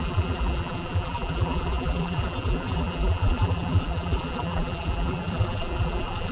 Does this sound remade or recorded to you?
remade